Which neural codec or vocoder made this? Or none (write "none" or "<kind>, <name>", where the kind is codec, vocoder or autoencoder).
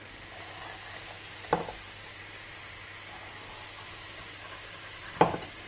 none